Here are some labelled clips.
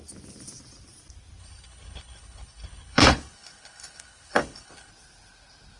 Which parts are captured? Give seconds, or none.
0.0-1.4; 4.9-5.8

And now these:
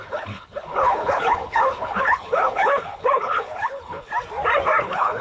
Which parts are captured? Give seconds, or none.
4.1-4.8

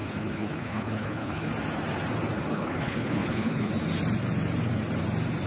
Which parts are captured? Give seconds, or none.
1.5-2.5; 3.7-5.5

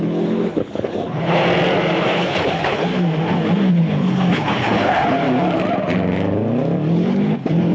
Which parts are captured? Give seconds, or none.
1.4-2.0; 2.9-3.7; 5.2-6.9